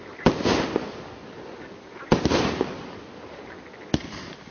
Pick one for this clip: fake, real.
real